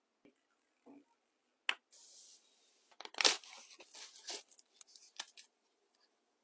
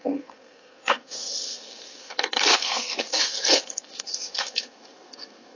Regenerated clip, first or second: second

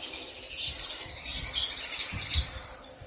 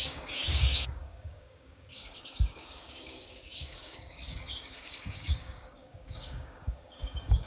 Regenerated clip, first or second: second